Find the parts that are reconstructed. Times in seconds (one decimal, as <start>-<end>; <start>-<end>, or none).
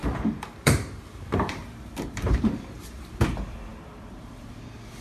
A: 0.0-3.0